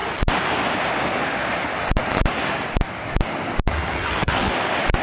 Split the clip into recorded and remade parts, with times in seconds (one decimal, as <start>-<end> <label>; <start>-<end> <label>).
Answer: 0.0-3.7 recorded; 3.7-4.5 remade; 4.5-5.0 recorded

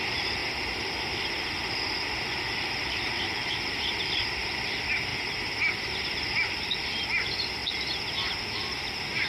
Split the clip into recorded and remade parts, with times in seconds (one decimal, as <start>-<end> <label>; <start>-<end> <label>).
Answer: 0.0-0.4 remade; 0.4-2.1 recorded; 2.1-5.1 remade; 5.1-5.9 recorded; 5.9-7.6 remade; 7.6-8.4 recorded; 8.4-9.3 remade

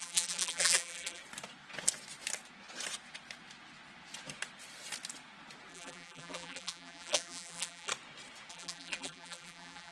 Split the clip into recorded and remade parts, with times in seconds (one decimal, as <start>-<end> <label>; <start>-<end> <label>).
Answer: 0.0-1.2 remade; 1.2-5.7 recorded; 5.7-7.9 remade; 7.9-8.5 recorded; 8.5-9.9 remade